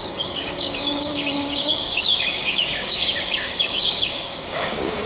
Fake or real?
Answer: fake